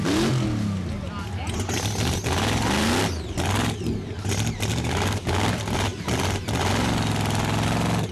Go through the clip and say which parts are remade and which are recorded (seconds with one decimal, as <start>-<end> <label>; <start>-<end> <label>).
0.0-4.7 recorded; 4.7-5.5 remade; 5.5-8.1 recorded